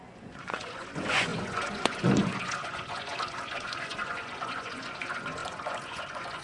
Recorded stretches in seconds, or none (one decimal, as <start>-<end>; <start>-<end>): none